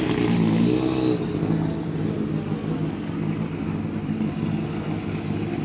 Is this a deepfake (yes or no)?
no